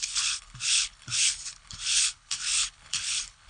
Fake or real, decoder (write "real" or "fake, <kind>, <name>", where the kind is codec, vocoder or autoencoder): fake, codec, HILCodec